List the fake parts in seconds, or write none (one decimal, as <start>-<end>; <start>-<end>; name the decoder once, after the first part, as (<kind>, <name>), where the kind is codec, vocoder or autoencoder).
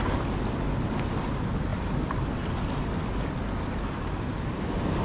none